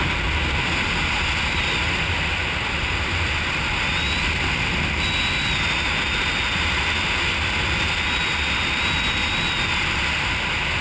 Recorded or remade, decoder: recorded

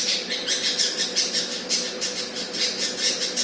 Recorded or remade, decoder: recorded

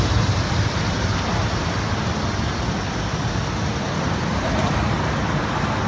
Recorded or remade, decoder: recorded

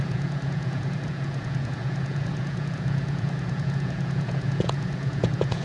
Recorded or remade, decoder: remade, vocoder, Vocos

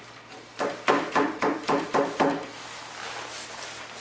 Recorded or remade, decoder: recorded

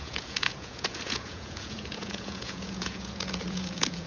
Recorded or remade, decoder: remade, vocoder, Vocos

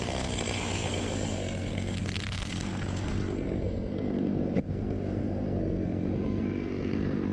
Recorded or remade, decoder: remade, codec, SNAC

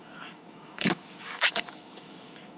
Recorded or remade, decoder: remade, codec, DAC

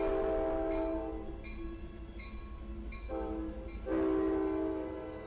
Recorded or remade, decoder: recorded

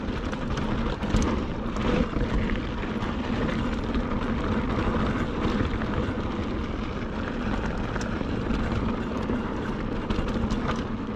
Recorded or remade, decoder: recorded